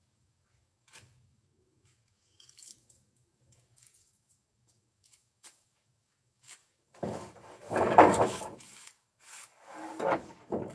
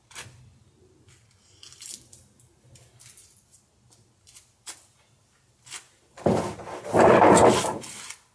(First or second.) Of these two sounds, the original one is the second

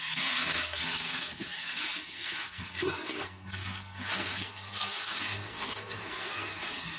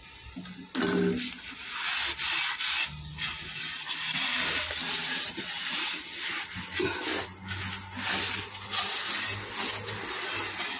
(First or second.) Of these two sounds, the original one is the second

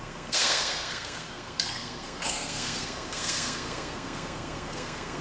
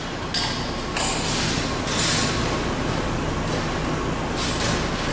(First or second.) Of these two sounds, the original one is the second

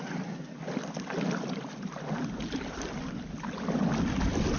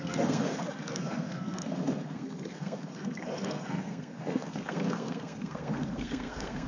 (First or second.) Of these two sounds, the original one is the first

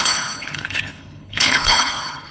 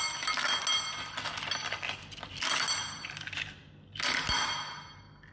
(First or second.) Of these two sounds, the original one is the second